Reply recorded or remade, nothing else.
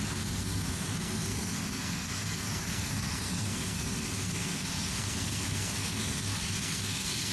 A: remade